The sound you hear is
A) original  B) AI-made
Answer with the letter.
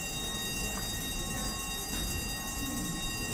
A